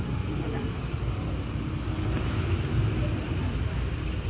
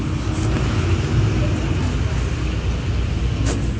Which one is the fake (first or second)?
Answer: first